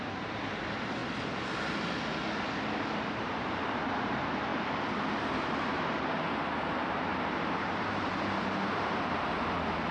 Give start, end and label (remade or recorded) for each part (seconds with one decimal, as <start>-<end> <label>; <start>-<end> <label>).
0.0-1.0 remade; 1.0-3.2 recorded; 3.2-9.9 remade